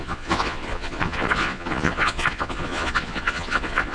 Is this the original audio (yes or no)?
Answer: no